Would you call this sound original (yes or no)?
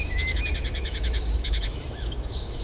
no